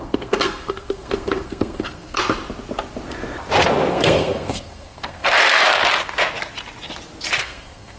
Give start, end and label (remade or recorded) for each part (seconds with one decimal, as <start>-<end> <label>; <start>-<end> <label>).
0.0-2.2 remade; 2.2-3.9 recorded; 3.9-5.4 remade; 5.4-7.4 recorded; 7.4-8.0 remade